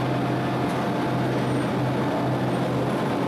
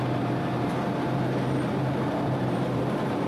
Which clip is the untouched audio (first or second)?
first